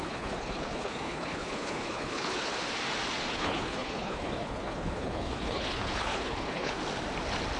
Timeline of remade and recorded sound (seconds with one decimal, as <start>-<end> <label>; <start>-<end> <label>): 0.0-2.5 remade; 2.5-3.3 recorded; 3.3-6.8 remade; 6.8-7.6 recorded